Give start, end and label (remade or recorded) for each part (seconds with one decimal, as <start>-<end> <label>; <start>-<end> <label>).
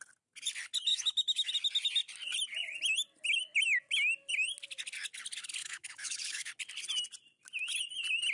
0.0-0.9 recorded; 0.9-1.5 remade; 1.5-5.6 recorded; 5.6-6.5 remade; 6.5-8.3 recorded